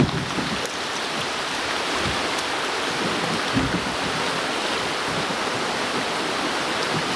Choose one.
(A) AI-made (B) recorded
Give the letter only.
B